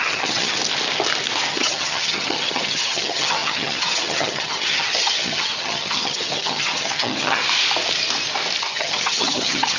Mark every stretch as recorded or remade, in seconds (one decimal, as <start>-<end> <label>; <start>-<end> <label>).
0.0-0.6 remade; 0.6-1.5 recorded; 1.5-7.4 remade; 7.4-8.6 recorded; 8.6-9.8 remade